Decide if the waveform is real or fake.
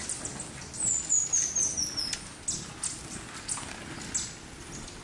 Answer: real